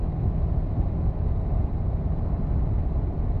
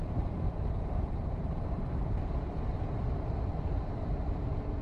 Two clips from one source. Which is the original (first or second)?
first